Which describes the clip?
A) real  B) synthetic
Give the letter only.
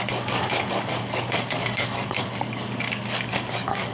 B